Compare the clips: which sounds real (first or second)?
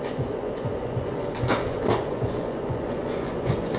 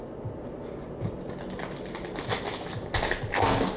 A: second